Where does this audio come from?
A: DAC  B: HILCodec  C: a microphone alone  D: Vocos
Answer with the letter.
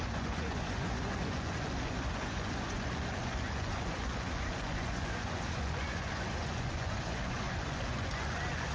D